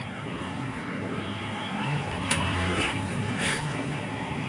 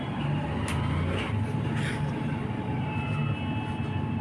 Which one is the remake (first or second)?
first